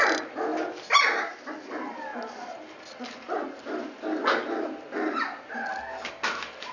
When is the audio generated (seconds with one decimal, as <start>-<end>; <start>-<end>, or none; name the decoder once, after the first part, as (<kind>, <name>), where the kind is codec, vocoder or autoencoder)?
0.0-0.5 (vocoder, BigVGAN v2); 1.7-2.1; 6.1-6.7